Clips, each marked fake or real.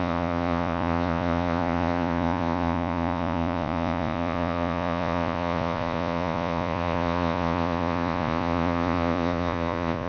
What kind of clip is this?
fake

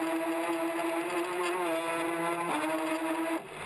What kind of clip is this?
real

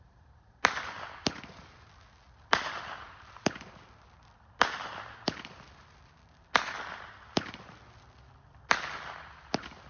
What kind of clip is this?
real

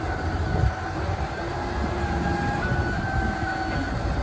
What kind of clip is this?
real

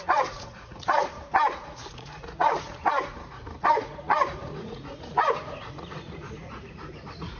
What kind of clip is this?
fake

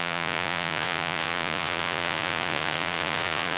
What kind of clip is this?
fake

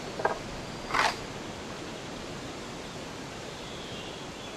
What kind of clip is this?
real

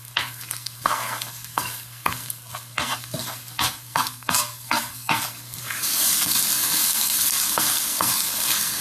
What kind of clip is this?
fake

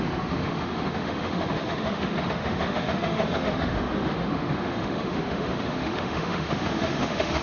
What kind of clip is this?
fake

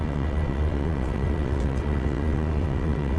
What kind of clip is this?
fake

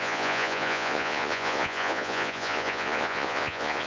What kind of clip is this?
fake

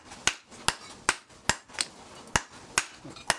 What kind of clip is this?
real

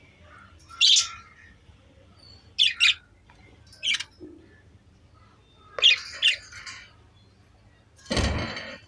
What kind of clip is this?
real